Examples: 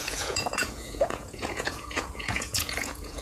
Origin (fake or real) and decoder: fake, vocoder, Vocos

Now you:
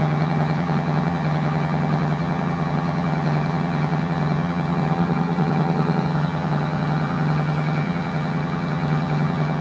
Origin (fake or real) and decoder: fake, vocoder, HiFi-GAN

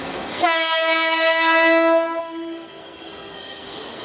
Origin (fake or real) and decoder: fake, codec, SNAC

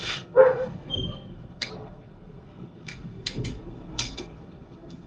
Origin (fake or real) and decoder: fake, codec, SNAC